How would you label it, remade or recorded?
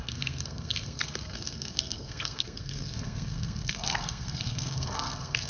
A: remade